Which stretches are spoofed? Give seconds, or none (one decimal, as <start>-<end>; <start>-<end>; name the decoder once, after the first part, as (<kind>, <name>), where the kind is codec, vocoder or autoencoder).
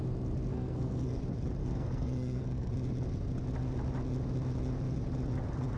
0.5-1.2 (codec, SNAC); 1.6-2.7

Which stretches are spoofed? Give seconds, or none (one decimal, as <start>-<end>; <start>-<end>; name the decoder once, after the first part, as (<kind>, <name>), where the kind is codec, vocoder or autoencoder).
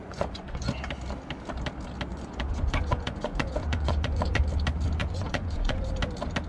0.0-0.7 (vocoder, Vocos); 2.1-4.4; 5.0-5.9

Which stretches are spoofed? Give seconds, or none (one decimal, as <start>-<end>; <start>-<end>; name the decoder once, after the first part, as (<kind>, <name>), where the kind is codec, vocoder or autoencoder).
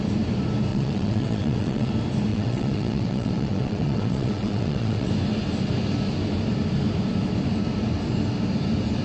0.7-1.9 (vocoder, WaveNeXt); 2.3-5.1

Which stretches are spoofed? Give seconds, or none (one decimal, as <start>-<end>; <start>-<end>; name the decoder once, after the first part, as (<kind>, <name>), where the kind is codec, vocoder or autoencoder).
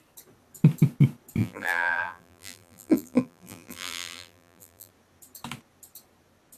1.4-4.9 (vocoder, BigVGAN v2)